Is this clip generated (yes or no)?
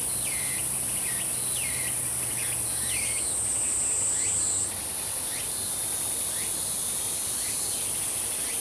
no